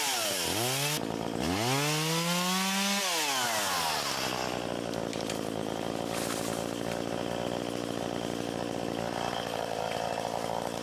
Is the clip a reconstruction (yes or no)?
no